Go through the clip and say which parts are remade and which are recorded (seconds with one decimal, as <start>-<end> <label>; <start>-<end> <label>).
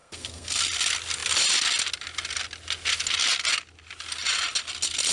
0.0-0.6 remade; 0.6-5.1 recorded